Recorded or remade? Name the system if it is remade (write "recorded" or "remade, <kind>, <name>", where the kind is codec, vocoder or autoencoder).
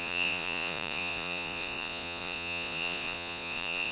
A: remade, vocoder, Vocos